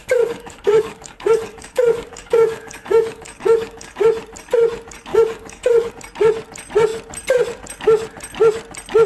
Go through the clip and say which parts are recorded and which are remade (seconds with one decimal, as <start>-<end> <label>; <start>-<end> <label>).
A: 0.0-4.0 remade; 4.0-5.1 recorded; 5.1-5.9 remade; 5.9-9.1 recorded

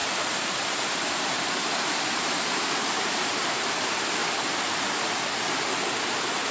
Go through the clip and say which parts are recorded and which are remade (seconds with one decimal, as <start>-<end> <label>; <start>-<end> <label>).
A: 0.0-4.2 remade; 4.2-6.0 recorded; 6.0-6.5 remade

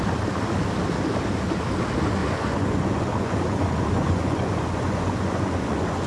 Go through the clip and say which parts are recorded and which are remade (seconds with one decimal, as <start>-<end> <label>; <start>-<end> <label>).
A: 0.0-2.2 recorded; 2.2-6.1 remade

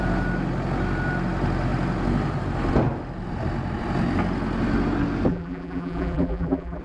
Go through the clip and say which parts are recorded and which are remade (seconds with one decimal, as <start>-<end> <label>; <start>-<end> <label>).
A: 0.0-5.3 recorded; 5.3-6.8 remade

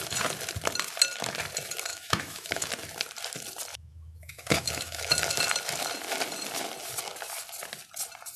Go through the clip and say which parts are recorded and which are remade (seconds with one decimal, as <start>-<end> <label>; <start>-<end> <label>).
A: 0.0-1.9 recorded; 1.9-2.7 remade; 2.7-3.7 recorded; 3.7-5.1 remade; 5.1-8.4 recorded

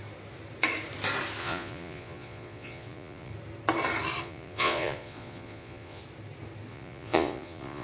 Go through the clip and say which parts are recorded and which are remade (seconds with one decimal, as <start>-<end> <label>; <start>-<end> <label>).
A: 0.0-1.4 recorded; 1.4-3.3 remade; 3.3-4.2 recorded; 4.2-6.0 remade; 6.0-6.7 recorded; 6.7-7.8 remade